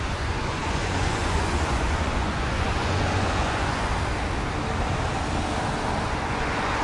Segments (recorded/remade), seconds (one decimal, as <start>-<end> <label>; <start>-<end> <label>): 0.0-3.9 remade; 3.9-6.0 recorded; 6.0-6.8 remade